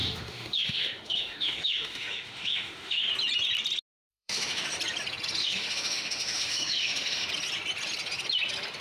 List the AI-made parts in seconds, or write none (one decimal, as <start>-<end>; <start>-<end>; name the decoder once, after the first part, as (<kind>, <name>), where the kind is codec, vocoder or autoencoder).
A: 0.0-3.1 (autoencoder, DAC-VAE); 4.1-4.6; 5.4-7.3